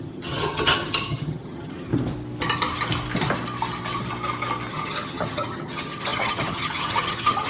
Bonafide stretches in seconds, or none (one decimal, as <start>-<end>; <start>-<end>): 1.9-4.7